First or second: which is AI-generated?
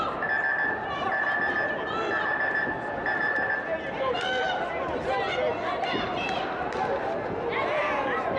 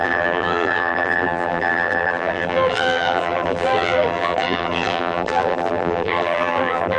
second